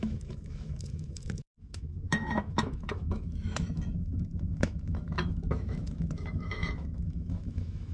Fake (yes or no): yes